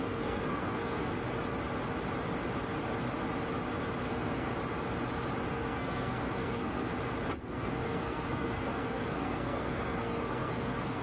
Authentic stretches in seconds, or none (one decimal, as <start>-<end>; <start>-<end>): 1.1-4.1; 4.5-5.5; 6.9-7.4